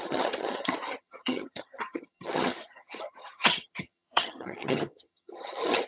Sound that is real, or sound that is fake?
fake